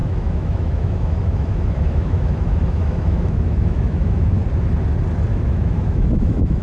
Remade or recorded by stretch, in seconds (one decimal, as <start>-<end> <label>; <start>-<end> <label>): 0.0-4.4 remade; 4.4-5.3 recorded; 5.3-6.6 remade